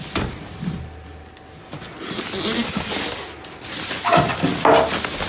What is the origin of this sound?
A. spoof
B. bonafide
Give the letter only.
B